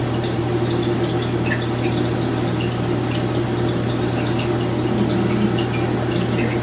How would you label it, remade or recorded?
recorded